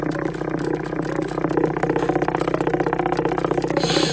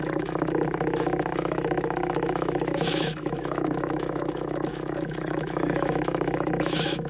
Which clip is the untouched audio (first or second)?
first